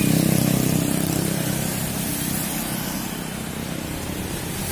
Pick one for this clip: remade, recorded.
recorded